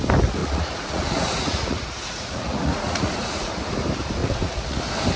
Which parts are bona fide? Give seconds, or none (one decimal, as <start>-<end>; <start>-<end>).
0.0-0.4; 3.5-4.2; 4.8-5.2

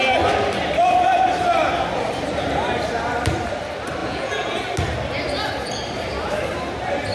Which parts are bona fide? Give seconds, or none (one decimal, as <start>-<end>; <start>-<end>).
0.0-4.0; 4.6-7.1

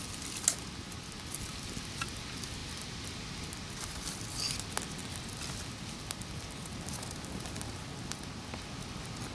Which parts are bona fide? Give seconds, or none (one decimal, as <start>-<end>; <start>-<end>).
0.0-9.3

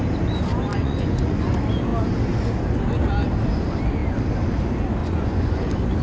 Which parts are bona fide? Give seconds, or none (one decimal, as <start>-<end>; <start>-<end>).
0.0-0.7; 1.5-5.0; 5.6-6.0

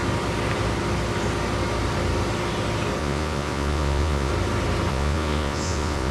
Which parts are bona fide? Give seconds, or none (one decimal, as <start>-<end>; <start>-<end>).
0.0-3.0; 4.3-4.9

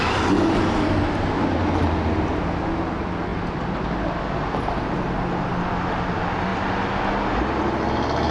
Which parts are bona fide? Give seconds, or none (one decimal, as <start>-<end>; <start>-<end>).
0.0-8.3

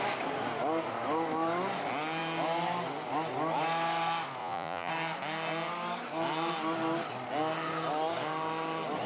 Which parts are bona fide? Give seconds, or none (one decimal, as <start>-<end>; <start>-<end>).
0.0-4.4; 4.9-9.1

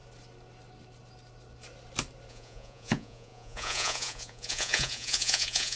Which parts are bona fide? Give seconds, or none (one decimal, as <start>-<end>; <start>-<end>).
0.0-2.3